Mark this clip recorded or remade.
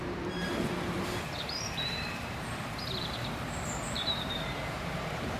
remade